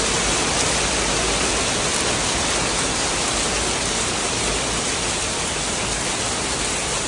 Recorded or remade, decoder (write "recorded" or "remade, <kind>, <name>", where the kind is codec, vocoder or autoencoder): recorded